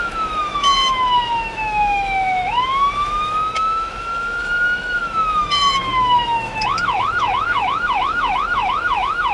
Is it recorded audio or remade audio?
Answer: remade